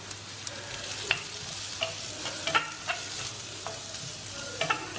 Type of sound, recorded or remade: recorded